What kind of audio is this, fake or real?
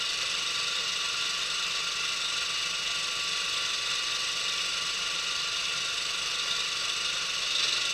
real